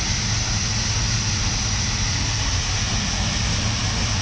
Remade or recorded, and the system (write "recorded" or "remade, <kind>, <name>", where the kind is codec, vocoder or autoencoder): recorded